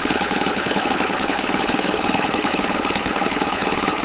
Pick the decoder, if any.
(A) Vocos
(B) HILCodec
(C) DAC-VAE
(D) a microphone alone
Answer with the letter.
B